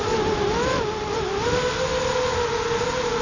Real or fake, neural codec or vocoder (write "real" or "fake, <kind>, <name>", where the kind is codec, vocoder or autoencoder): real